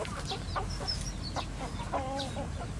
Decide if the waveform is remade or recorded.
recorded